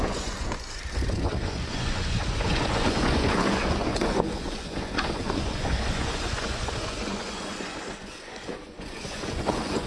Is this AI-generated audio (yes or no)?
yes